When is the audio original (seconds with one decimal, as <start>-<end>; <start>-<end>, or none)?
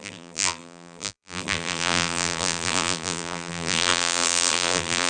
none